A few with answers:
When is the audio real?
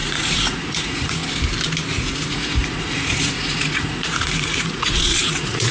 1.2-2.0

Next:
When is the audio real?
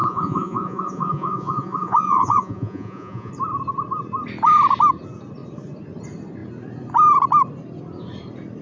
3.3-8.6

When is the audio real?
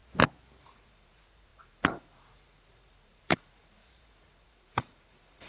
0.0-0.6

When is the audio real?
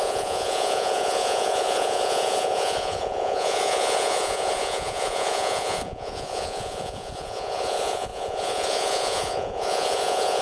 none